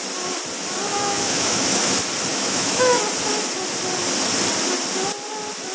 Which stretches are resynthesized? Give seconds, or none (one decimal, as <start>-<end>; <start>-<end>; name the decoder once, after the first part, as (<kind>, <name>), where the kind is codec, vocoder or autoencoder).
0.9-1.9 (autoencoder, DAC-VAE); 2.3-3.0